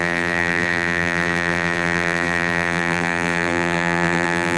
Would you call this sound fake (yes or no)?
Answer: yes